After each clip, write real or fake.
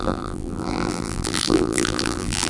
fake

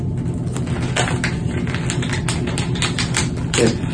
real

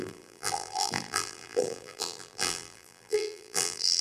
fake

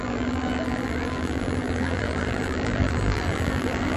fake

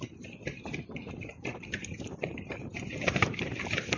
fake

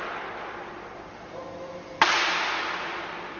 real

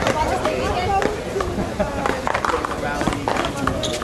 fake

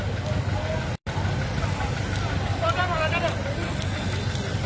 real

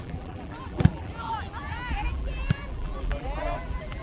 fake